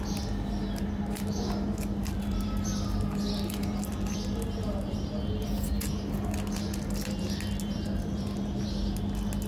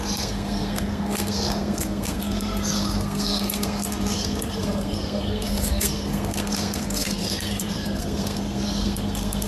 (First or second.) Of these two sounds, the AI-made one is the second